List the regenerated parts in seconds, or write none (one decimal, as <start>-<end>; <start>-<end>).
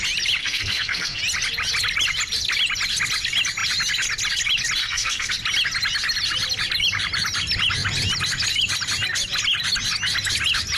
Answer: 0.4-1.2; 4.8-5.3